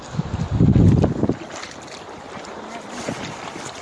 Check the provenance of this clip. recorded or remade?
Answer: recorded